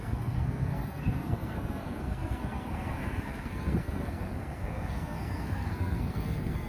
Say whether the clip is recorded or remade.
remade